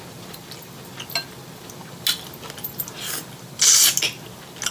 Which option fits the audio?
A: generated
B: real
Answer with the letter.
B